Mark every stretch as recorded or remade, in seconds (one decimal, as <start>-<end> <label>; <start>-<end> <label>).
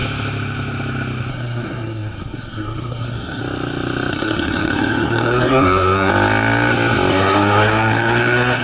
0.0-1.3 recorded; 1.3-3.4 remade; 3.4-4.1 recorded; 4.1-6.1 remade; 6.1-7.1 recorded; 7.1-8.6 remade